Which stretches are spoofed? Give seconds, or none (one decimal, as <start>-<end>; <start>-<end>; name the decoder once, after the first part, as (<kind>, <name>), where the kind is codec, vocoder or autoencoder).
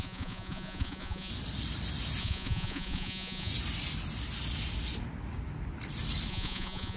0.0-1.3 (vocoder, Vocos); 2.2-3.5; 6.3-7.0